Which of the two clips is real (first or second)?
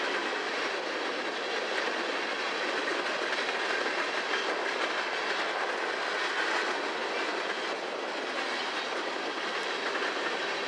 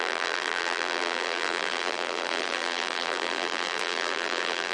first